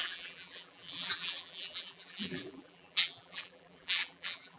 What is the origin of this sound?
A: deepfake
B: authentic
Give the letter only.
A